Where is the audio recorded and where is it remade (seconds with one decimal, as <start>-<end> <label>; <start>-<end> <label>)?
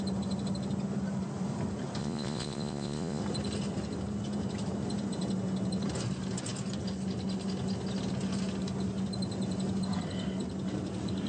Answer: 0.0-2.0 recorded; 2.0-3.2 remade; 3.2-11.3 recorded